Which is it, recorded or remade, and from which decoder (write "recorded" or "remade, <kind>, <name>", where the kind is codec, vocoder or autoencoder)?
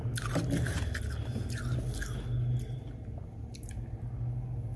recorded